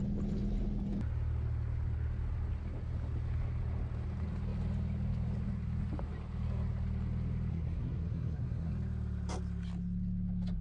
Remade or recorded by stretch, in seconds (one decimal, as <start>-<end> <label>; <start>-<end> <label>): 0.0-7.5 recorded; 7.5-8.7 remade; 8.7-10.6 recorded

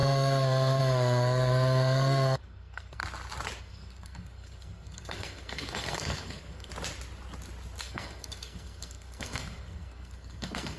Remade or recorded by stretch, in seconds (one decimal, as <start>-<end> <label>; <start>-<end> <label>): 0.0-3.0 remade; 3.0-3.6 recorded; 3.6-6.7 remade; 6.7-7.8 recorded; 7.8-10.8 remade

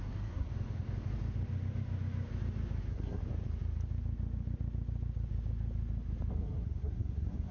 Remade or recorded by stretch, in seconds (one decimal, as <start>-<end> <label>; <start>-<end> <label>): 0.0-0.5 remade; 0.5-2.8 recorded; 2.8-3.2 remade; 3.2-6.3 recorded; 6.3-7.5 remade

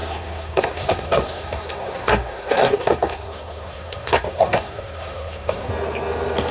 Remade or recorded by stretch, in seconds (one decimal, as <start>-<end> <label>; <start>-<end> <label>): 0.0-5.7 remade; 5.7-6.5 recorded

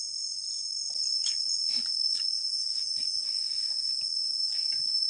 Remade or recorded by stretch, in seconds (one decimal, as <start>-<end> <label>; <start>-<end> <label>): 0.0-5.1 recorded

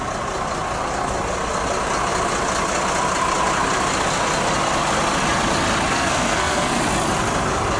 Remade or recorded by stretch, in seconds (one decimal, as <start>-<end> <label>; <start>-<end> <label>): 0.0-5.9 recorded; 5.9-6.8 remade; 6.8-7.8 recorded

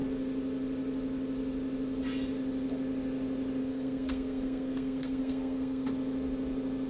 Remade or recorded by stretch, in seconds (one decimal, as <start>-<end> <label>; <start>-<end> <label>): 0.0-3.6 recorded; 3.6-5.9 remade; 5.9-6.9 recorded

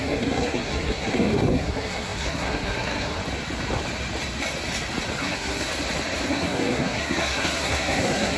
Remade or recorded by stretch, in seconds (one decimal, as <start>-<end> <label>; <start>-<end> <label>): 0.0-3.2 remade; 3.2-5.2 recorded; 5.2-5.7 remade; 5.7-6.3 recorded; 6.3-8.4 remade